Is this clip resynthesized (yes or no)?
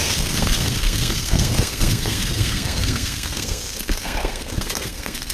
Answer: yes